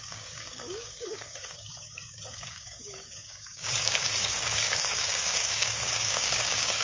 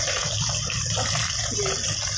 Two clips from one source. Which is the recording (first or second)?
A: second